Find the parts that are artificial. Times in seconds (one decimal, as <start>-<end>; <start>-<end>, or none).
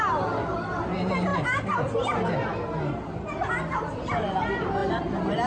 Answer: 0.0-1.3; 3.5-5.5